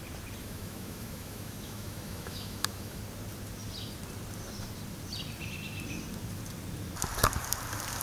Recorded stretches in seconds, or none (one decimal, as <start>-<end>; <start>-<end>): 0.0-0.4; 3.0-8.0